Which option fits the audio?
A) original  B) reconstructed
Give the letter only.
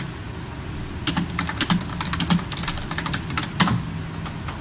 A